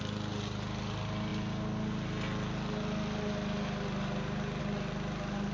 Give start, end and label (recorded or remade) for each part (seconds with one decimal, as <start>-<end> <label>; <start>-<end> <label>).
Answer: 0.0-5.5 recorded